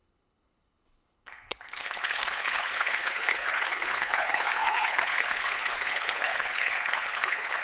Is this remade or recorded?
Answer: remade